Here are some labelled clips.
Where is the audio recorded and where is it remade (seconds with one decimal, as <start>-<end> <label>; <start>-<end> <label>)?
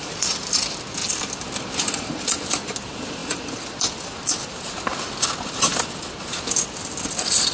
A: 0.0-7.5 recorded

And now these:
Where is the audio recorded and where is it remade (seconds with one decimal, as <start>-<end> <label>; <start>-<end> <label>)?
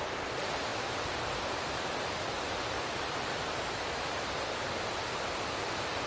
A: 0.0-6.1 remade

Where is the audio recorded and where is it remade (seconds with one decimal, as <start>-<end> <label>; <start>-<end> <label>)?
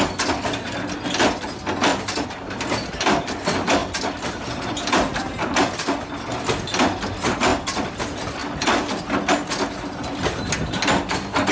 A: 0.0-1.9 recorded; 1.9-2.6 remade; 2.6-8.4 recorded; 8.4-9.0 remade; 9.0-11.5 recorded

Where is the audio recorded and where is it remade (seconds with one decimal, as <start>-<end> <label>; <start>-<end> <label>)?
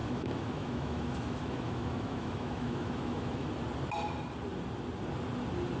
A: 0.0-3.5 remade; 3.5-5.8 recorded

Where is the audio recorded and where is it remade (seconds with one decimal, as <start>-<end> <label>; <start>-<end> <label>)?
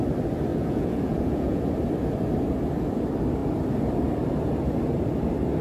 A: 0.0-0.5 recorded; 0.5-1.6 remade; 1.6-5.6 recorded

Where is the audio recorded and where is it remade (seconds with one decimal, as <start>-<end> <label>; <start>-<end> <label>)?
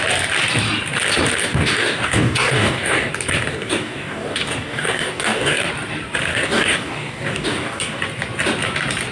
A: 0.0-1.4 recorded; 1.4-3.1 remade; 3.1-3.5 recorded; 3.5-5.7 remade; 5.7-6.3 recorded; 6.3-8.0 remade; 8.0-9.1 recorded